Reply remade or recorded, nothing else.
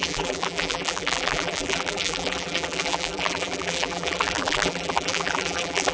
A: remade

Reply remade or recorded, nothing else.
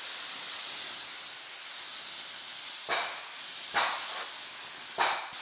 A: recorded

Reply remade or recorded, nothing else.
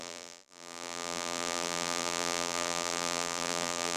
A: remade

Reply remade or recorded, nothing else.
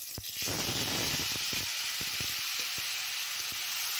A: recorded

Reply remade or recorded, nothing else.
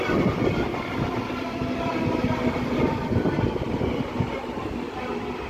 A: remade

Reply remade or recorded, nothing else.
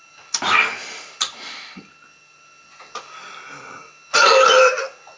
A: recorded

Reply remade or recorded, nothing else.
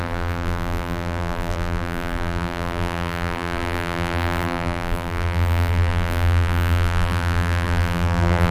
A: remade